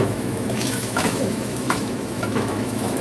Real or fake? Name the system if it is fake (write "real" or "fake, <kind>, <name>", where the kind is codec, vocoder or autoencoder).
fake, autoencoder, DAC-VAE